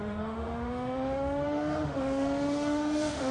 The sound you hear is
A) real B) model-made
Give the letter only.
B